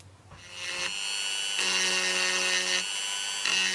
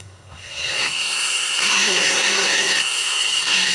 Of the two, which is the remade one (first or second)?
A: second